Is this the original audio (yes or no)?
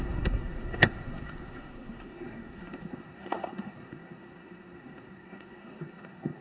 no